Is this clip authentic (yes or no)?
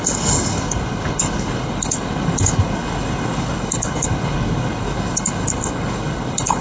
no